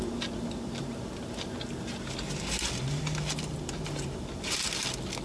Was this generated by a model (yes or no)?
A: no